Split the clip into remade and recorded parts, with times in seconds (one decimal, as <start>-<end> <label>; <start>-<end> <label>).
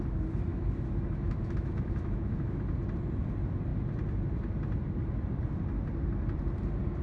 0.0-0.5 recorded; 0.5-2.6 remade; 2.6-7.0 recorded